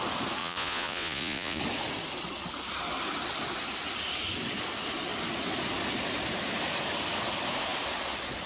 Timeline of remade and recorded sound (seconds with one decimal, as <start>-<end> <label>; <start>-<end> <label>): 0.0-0.4 recorded; 0.4-1.6 remade; 1.6-8.5 recorded